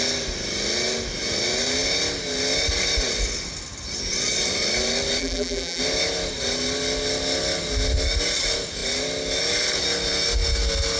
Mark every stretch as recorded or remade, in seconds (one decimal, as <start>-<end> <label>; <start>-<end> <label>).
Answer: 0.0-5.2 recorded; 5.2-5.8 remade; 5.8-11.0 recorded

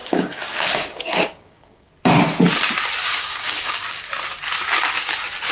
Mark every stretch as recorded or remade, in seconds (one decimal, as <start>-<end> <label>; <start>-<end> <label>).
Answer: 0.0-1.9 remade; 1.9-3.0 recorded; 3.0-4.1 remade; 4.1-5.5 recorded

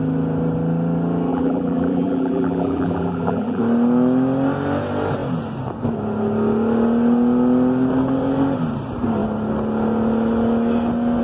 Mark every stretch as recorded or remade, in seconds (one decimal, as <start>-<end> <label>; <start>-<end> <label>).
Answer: 0.0-1.3 recorded; 1.3-3.6 remade; 3.6-11.2 recorded

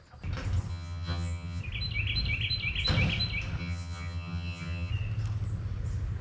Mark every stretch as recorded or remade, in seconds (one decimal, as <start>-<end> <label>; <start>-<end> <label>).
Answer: 0.0-0.7 recorded; 0.7-1.6 remade; 1.6-3.6 recorded; 3.6-4.9 remade; 4.9-6.2 recorded

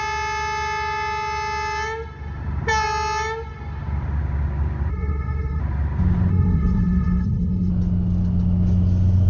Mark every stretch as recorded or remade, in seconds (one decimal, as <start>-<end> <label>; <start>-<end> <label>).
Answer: 0.0-4.9 recorded; 4.9-5.6 remade; 5.6-6.3 recorded; 6.3-7.7 remade; 7.7-9.3 recorded